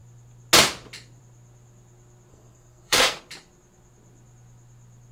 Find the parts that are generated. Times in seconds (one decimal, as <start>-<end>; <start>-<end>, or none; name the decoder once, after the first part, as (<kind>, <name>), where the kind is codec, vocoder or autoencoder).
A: 2.3-3.2 (codec, SNAC)